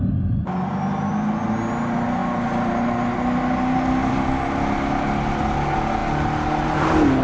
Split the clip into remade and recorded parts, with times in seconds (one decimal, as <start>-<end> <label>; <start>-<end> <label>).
0.0-7.2 recorded